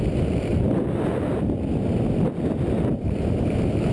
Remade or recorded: recorded